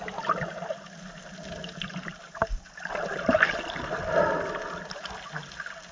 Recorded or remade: recorded